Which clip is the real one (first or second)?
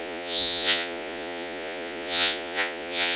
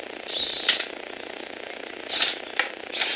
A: second